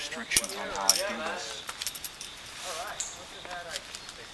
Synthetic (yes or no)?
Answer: no